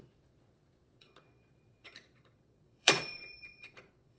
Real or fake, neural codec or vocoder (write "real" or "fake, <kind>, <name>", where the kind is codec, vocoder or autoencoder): fake, vocoder, Vocos